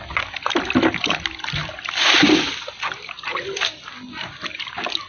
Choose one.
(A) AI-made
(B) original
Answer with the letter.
B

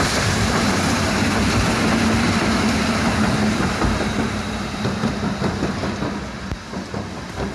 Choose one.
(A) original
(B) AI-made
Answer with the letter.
B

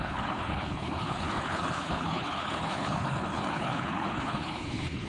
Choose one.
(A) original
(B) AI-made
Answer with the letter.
B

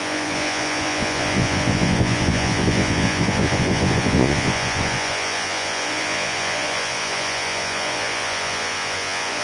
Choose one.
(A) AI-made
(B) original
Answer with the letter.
A